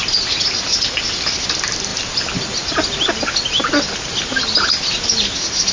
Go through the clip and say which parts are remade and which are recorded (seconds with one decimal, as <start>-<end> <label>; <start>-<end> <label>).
0.0-5.7 recorded